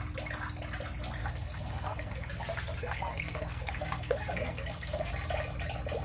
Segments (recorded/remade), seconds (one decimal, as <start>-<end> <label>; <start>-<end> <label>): 0.0-1.2 recorded; 1.2-2.3 remade; 2.3-2.8 recorded; 2.8-5.1 remade; 5.1-6.0 recorded